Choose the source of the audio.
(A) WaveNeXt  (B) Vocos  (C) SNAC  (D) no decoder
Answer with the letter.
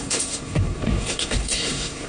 C